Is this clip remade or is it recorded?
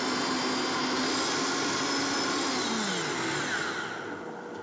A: recorded